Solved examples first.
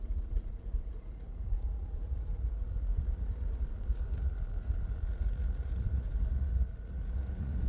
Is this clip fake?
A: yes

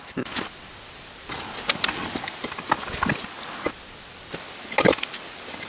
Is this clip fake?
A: no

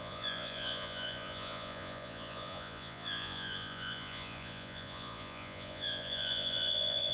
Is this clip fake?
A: yes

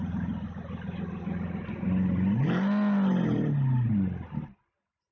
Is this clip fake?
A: no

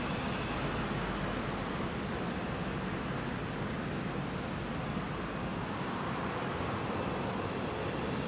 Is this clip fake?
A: no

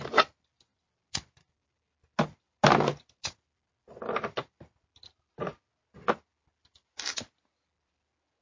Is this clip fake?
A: no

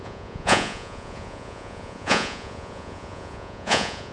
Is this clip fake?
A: yes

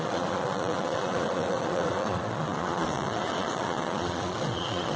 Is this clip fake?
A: yes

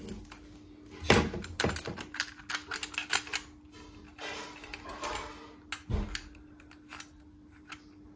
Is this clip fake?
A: no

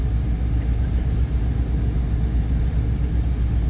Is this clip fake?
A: no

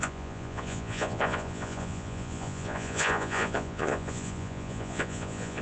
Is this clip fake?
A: yes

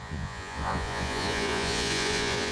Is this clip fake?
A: yes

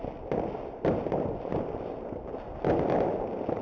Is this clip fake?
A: no